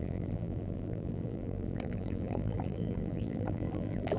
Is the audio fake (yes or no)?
yes